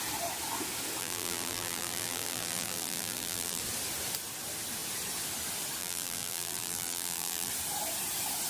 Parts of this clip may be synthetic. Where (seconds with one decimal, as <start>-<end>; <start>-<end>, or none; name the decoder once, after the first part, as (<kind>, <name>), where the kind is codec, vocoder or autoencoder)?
1.0-3.6 (vocoder, BigVGAN v2); 5.8-7.5